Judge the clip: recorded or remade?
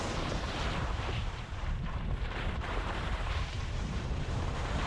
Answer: remade